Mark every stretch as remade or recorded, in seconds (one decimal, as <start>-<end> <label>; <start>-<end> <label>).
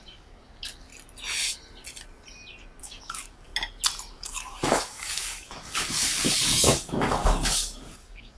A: 0.0-0.9 remade; 0.9-2.8 recorded; 2.8-3.5 remade; 3.5-4.1 recorded; 4.1-8.4 remade